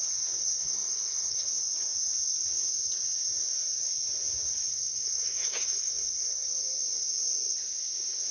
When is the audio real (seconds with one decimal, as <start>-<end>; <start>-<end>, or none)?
0.0-0.4; 1.5-4.7; 6.5-8.3